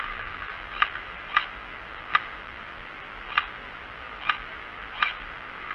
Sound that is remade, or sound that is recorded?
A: remade